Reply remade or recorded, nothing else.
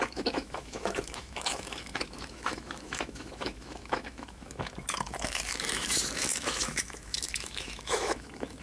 remade